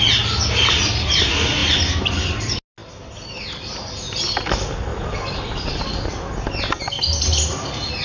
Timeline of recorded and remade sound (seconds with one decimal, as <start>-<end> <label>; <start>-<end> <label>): 0.0-8.0 recorded